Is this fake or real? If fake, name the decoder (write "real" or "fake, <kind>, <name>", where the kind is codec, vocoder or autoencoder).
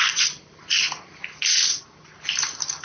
real